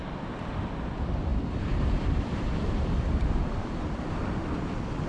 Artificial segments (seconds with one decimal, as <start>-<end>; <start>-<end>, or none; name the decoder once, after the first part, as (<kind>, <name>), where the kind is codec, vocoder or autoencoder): 1.3-4.0 (vocoder, BigVGAN v2)